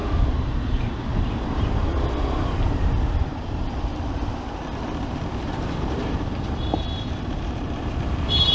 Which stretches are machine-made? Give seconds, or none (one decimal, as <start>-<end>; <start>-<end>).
0.0-3.3; 5.4-8.5